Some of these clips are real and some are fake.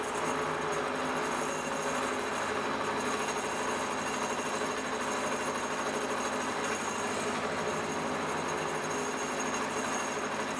real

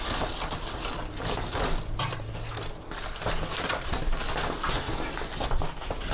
real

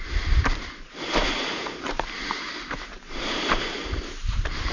fake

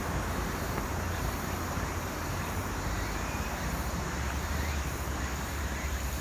fake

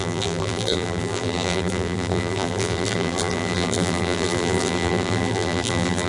fake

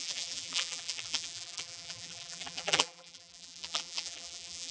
fake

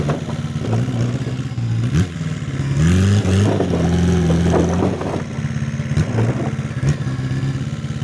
real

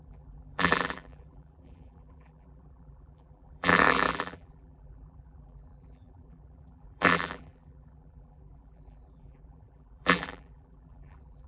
fake